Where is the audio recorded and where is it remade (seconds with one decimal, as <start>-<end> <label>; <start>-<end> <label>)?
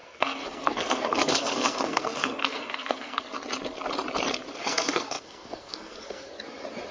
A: 0.0-3.2 remade; 3.2-4.6 recorded; 4.6-6.3 remade; 6.3-6.9 recorded